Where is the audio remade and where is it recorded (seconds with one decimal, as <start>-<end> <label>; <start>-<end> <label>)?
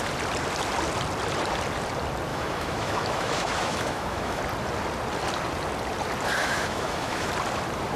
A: 0.0-2.3 recorded; 2.3-4.4 remade; 4.4-6.4 recorded; 6.4-7.3 remade; 7.3-8.0 recorded